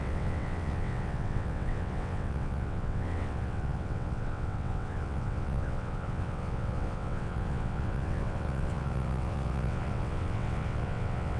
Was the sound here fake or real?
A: fake